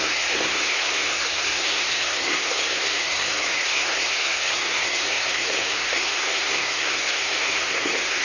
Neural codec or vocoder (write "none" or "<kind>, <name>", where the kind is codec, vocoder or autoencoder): codec, SNAC